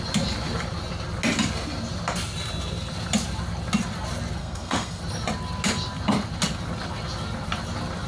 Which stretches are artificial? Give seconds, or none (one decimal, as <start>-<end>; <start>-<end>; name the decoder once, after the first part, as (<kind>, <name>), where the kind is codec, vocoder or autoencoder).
4.4-5.0 (codec, SNAC)